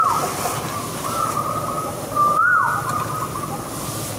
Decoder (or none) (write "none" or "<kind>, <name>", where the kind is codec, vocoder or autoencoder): none